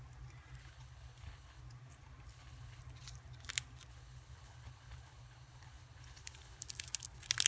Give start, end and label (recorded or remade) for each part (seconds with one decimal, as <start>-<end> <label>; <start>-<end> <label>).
0.0-0.6 recorded; 0.6-1.6 remade; 1.6-2.3 recorded; 2.3-2.8 remade; 2.8-3.9 recorded; 3.9-6.7 remade; 6.7-7.5 recorded